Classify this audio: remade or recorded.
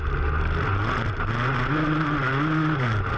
recorded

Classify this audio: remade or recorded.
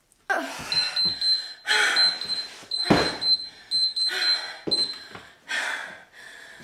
recorded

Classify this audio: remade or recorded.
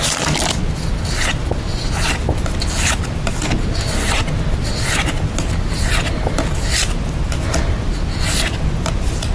recorded